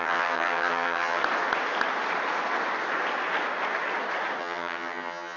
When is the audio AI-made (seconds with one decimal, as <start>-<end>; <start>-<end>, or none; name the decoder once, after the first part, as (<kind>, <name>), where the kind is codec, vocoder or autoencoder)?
0.0-1.2 (vocoder, HiFi-GAN); 4.4-5.4